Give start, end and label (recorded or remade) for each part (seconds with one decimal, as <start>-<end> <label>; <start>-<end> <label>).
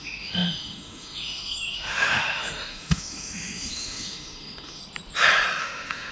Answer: 0.0-4.8 remade; 4.8-5.6 recorded; 5.6-6.1 remade